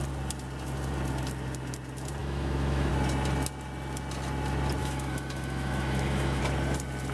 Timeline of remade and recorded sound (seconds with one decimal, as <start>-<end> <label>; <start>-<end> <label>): 0.0-2.2 recorded; 2.2-2.9 remade; 2.9-4.8 recorded; 4.8-6.4 remade; 6.4-7.1 recorded